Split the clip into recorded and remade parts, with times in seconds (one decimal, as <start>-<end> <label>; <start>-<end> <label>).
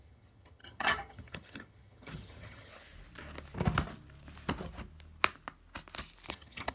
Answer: 0.0-2.7 remade; 2.7-6.3 recorded; 6.3-6.7 remade